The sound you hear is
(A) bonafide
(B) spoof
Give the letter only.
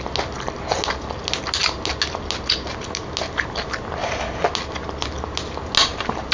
A